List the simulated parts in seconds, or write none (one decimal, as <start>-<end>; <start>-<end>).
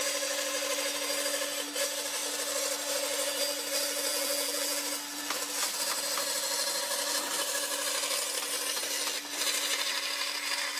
4.1-4.8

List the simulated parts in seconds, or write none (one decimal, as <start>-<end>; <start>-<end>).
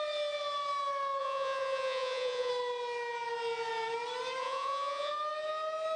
1.2-2.5; 4.4-5.1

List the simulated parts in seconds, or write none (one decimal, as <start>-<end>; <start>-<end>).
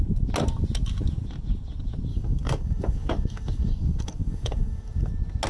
2.1-5.1